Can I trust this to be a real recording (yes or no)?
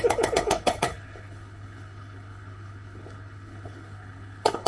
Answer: no